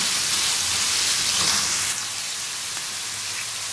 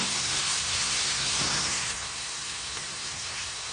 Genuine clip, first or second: first